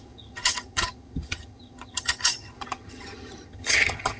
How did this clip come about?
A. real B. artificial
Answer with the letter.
B